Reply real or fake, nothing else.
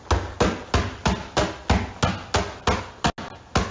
real